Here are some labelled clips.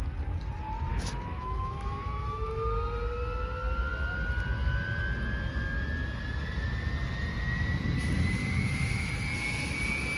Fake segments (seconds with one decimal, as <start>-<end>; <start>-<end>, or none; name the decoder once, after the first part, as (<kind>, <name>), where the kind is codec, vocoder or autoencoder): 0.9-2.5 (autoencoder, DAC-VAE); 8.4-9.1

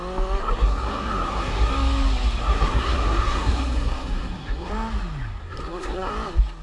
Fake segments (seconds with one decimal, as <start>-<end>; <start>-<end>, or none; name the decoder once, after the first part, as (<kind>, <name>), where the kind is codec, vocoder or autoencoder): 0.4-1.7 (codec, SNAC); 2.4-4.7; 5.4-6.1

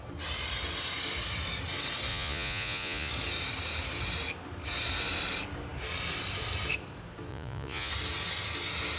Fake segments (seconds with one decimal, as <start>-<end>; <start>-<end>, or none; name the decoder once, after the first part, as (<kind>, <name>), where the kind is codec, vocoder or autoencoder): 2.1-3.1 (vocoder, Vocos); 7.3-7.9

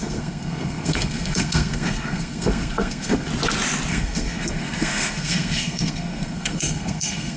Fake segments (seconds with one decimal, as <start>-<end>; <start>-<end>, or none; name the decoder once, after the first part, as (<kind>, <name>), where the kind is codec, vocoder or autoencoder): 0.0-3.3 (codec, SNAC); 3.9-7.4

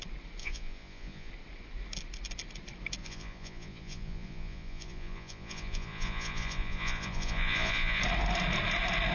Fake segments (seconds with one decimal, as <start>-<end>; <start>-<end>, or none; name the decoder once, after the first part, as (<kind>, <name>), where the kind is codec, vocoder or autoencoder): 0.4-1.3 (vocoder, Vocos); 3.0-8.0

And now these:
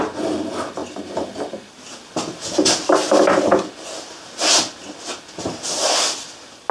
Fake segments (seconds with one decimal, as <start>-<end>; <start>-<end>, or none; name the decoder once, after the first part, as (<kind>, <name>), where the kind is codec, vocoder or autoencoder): none

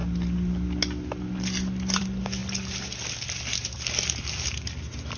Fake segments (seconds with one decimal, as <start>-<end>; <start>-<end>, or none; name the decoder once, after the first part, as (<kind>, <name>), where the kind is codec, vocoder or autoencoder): none

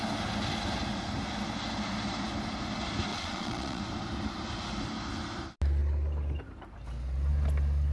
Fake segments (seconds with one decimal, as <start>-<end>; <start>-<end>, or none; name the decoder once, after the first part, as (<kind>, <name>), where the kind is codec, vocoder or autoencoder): 3.1-3.8 (vocoder, Vocos)